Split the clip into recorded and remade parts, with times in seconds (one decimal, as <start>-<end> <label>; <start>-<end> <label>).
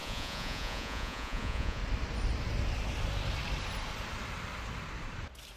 0.0-1.8 remade; 1.8-5.6 recorded